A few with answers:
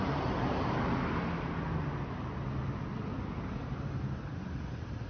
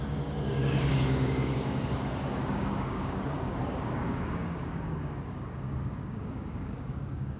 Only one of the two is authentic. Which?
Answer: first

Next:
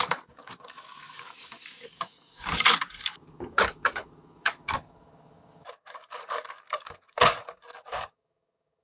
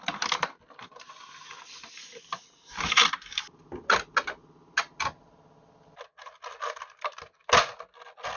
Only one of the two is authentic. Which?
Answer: second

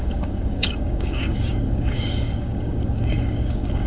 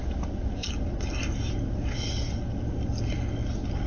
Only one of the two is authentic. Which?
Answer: second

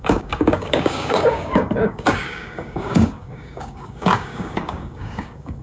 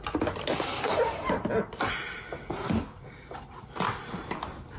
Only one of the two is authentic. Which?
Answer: second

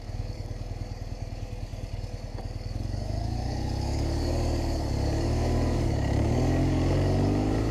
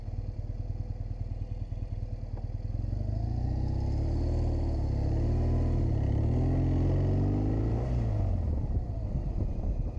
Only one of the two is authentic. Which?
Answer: second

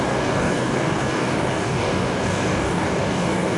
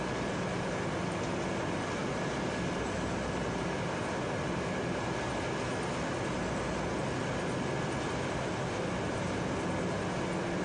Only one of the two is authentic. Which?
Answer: second